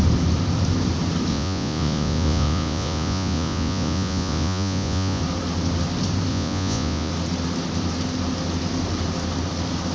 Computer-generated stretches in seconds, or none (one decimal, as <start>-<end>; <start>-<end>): 1.3-5.2; 6.3-7.1